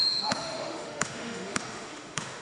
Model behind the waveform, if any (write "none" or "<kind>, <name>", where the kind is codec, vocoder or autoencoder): autoencoder, DAC-VAE